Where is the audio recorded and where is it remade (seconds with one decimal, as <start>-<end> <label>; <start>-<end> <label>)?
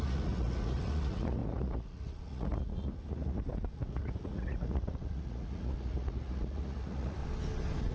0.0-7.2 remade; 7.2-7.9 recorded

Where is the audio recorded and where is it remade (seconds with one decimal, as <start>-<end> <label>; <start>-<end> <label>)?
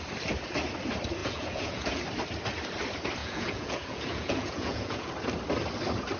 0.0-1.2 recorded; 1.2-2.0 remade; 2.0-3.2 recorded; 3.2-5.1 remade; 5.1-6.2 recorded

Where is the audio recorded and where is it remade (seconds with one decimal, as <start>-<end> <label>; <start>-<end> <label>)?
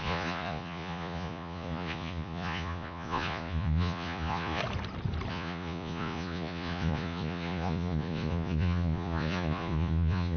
0.0-4.6 remade; 4.6-5.3 recorded; 5.3-10.4 remade